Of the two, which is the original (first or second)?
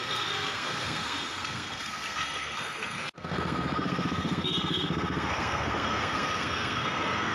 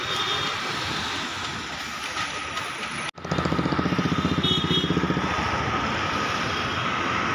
second